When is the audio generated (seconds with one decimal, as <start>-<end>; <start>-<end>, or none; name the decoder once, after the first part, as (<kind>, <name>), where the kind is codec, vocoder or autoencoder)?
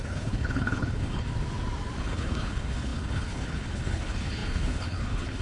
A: 0.0-1.3 (codec, HILCodec); 2.0-5.4